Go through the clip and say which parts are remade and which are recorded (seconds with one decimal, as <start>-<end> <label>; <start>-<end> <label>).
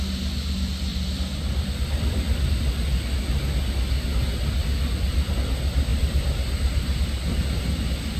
0.0-8.2 recorded